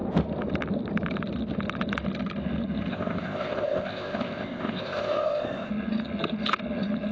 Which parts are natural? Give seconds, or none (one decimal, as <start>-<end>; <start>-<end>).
0.0-2.9; 5.7-7.1